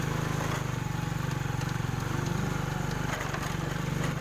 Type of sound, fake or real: real